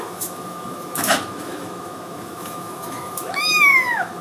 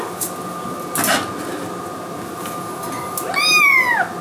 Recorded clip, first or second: second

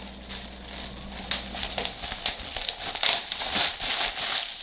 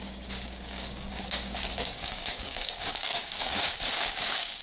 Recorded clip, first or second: first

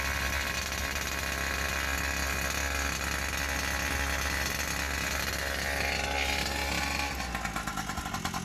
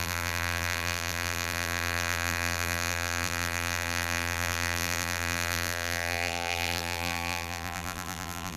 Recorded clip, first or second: first